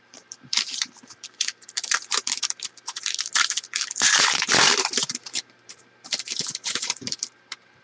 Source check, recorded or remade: remade